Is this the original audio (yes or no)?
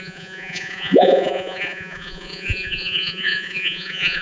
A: no